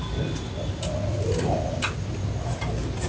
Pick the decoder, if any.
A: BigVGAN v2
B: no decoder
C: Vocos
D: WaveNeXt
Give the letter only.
B